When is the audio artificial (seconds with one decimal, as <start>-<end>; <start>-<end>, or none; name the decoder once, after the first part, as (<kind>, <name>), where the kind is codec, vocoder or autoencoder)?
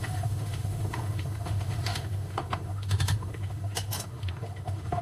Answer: 0.0-5.0 (autoencoder, DAC-VAE)